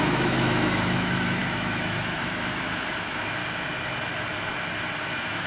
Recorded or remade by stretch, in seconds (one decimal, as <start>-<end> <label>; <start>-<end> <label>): 0.0-3.4 remade; 3.4-5.0 recorded; 5.0-5.5 remade